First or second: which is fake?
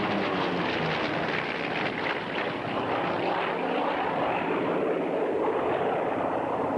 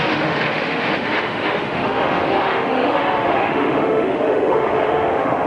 second